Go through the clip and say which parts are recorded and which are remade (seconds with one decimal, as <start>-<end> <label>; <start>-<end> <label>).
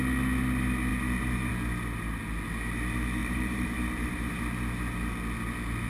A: 0.0-3.2 recorded; 3.2-4.4 remade; 4.4-5.9 recorded